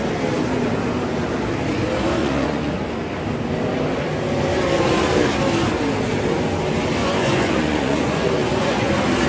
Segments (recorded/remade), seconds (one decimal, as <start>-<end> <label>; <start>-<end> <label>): 0.0-2.2 recorded; 2.2-2.7 remade; 2.7-7.0 recorded; 7.0-8.9 remade; 8.9-9.3 recorded